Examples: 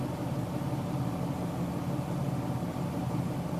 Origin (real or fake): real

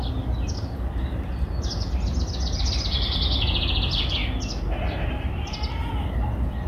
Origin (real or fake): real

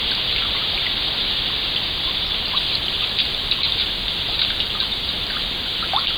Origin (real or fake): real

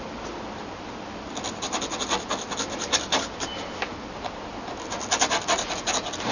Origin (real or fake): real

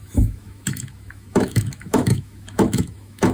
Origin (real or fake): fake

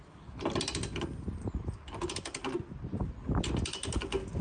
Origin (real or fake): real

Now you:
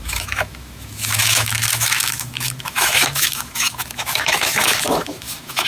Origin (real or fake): fake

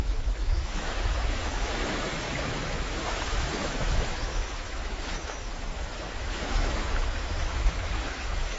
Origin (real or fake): fake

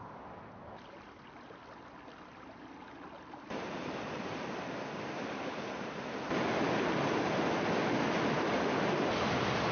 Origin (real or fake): real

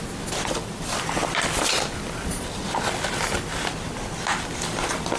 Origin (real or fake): real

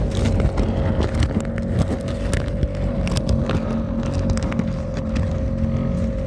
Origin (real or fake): real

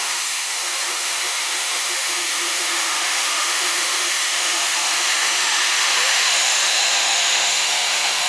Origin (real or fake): fake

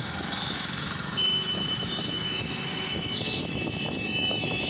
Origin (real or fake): fake